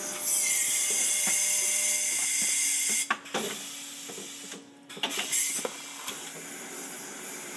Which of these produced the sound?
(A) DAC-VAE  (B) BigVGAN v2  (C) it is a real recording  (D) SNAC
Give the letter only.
C